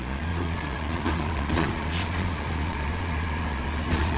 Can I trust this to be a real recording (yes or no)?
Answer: no